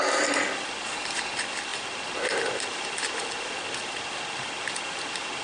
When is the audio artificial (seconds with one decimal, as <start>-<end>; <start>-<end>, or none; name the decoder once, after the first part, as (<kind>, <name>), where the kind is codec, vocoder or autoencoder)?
none